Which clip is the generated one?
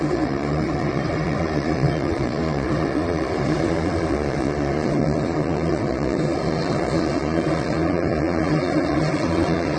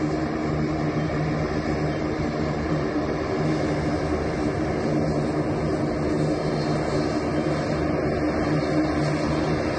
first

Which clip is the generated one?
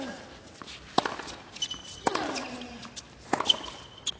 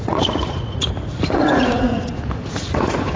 second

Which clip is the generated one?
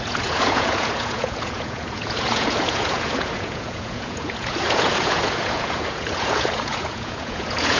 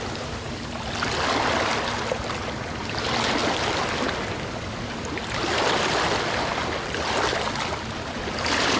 first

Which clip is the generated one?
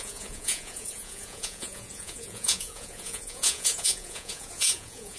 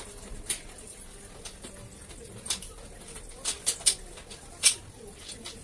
first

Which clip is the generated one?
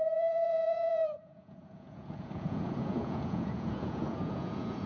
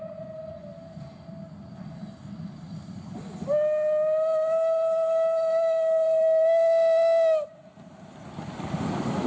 first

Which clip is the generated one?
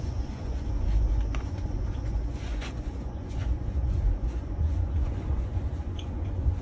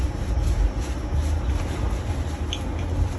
first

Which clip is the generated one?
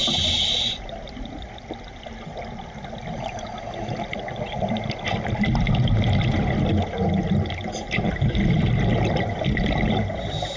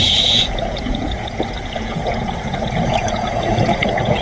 second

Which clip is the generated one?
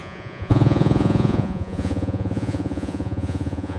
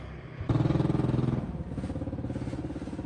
first